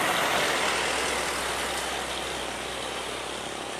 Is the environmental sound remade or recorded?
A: remade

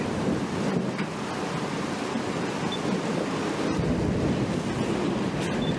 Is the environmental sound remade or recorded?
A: recorded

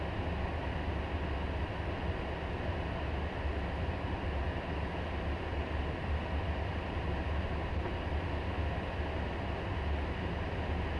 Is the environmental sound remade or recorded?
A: recorded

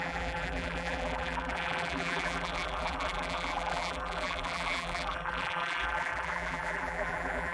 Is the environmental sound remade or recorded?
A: remade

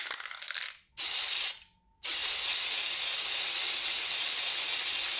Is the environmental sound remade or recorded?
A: recorded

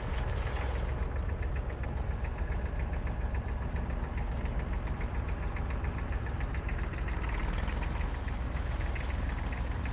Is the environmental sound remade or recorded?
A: recorded